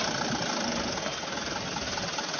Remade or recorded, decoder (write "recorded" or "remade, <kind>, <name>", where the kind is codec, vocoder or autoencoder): recorded